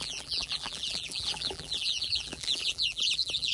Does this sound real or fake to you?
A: fake